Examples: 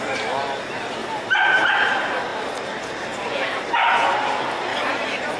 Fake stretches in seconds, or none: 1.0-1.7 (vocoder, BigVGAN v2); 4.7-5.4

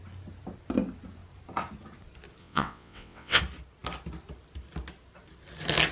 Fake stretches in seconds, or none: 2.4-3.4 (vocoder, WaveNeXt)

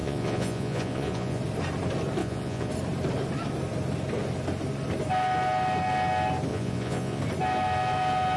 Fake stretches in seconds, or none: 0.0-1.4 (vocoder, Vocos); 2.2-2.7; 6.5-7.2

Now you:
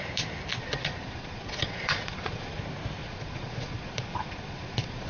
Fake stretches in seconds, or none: 0.6-2.6 (vocoder, Vocos); 3.0-5.1